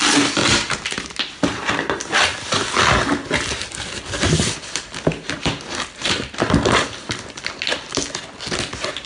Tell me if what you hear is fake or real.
real